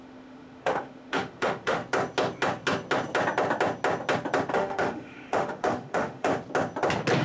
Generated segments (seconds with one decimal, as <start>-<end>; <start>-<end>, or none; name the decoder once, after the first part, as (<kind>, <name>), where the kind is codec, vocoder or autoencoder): 0.0-1.8 (autoencoder, DAC-VAE); 4.5-6.3